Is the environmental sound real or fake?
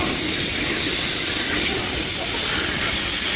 real